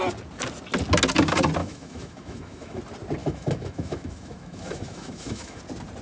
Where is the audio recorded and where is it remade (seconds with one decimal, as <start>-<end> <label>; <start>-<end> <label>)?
0.0-1.6 recorded; 1.6-2.8 remade; 2.8-3.2 recorded; 3.2-5.6 remade; 5.6-6.0 recorded